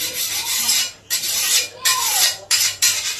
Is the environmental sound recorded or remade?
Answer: remade